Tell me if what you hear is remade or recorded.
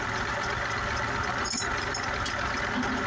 recorded